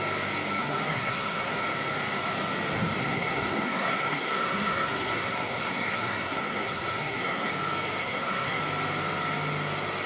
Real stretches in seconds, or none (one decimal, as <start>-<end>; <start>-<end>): 0.0-0.6; 1.6-3.0; 7.5-8.0; 8.6-10.1